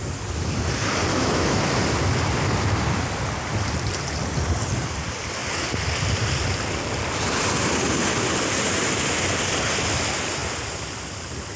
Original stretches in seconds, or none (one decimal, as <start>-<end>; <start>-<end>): 0.0-1.1; 1.6-11.6